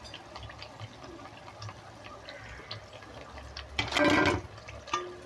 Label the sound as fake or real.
real